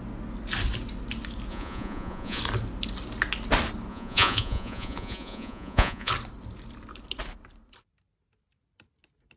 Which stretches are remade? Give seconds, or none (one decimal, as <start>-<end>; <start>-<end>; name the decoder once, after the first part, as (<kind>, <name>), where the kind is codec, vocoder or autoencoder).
1.5-2.4 (vocoder, Vocos); 3.9-6.1